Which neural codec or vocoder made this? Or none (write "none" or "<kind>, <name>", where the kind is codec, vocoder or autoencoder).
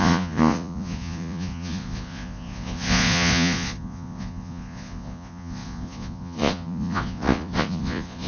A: vocoder, Vocos